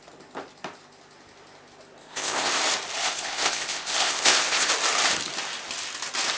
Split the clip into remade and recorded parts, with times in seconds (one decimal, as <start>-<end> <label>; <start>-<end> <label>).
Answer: 0.0-2.0 recorded; 2.0-2.6 remade; 2.6-3.0 recorded; 3.0-4.7 remade; 4.7-6.4 recorded